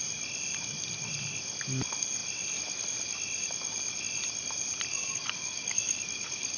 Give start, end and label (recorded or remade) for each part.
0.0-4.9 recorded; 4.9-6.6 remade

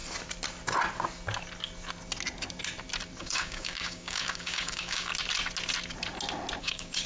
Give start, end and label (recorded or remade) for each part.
0.0-3.2 recorded; 3.2-5.1 remade; 5.1-6.6 recorded; 6.6-7.1 remade

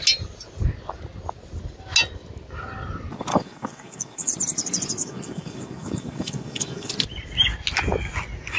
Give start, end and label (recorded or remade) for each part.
0.0-3.3 recorded; 3.3-4.3 remade; 4.3-5.0 recorded; 5.0-6.9 remade; 6.9-8.6 recorded

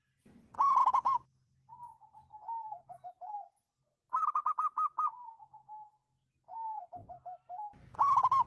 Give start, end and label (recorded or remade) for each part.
0.0-0.8 recorded; 0.8-1.7 remade; 1.7-8.5 recorded

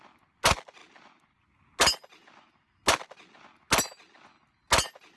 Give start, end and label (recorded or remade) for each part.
0.0-5.2 recorded